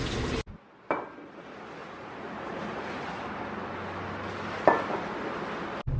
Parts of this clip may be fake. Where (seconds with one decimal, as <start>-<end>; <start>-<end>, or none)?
1.8-3.2